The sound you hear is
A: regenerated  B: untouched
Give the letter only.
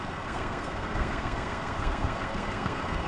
A